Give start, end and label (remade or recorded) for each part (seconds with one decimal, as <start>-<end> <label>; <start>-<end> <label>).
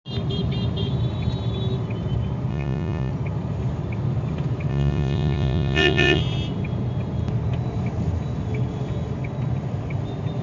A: 0.0-2.5 recorded; 2.5-3.1 remade; 3.1-4.7 recorded; 4.7-6.2 remade; 6.2-10.4 recorded